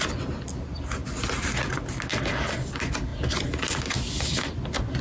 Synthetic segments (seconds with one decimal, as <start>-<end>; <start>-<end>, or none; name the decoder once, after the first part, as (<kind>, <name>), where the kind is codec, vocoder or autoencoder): none

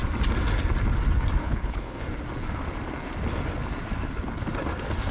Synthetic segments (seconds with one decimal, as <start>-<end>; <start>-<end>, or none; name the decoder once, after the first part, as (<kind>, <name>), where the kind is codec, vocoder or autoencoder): 1.4-2.0 (codec, HILCodec)